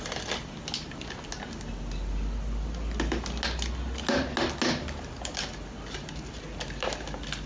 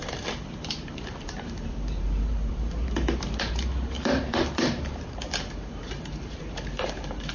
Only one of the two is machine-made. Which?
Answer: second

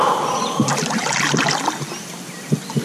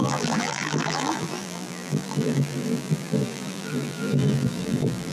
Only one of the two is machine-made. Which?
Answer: second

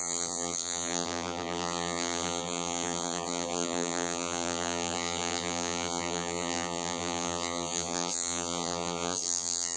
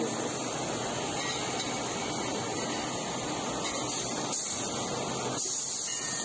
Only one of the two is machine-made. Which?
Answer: first